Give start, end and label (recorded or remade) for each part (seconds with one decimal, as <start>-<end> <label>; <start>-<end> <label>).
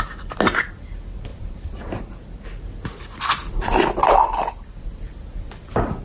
0.0-6.0 recorded